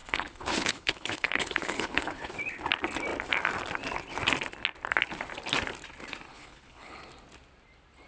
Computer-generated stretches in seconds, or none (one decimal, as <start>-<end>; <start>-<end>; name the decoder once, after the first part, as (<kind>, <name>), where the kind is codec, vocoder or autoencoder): 0.0-2.3 (codec, HILCodec); 6.3-7.0